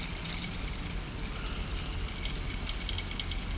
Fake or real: real